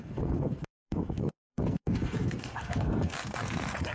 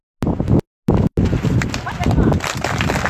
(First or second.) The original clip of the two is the second